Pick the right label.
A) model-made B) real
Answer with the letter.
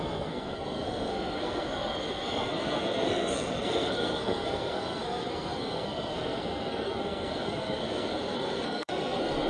A